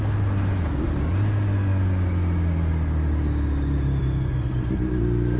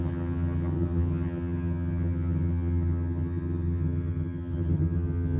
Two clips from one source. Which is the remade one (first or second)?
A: second